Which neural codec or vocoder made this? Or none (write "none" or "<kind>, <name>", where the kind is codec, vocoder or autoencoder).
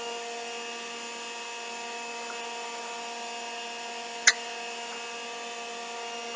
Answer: none